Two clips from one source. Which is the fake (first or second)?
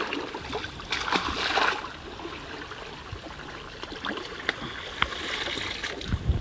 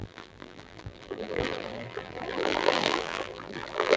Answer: second